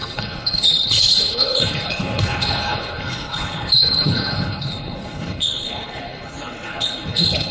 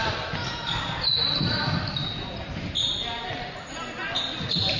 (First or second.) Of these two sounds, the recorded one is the second